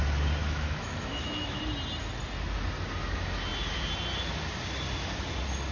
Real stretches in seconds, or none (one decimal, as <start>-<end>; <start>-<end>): 0.0-0.4; 1.6-5.7